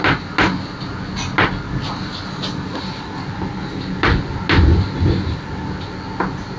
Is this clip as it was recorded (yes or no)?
yes